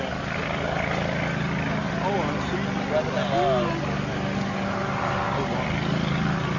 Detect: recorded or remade recorded